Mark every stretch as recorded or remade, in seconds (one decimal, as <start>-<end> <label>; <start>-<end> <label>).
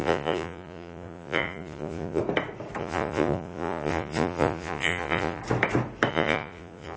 0.0-2.2 remade; 2.2-2.8 recorded; 2.8-5.4 remade; 5.4-6.1 recorded; 6.1-7.0 remade